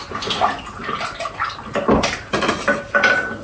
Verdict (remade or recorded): recorded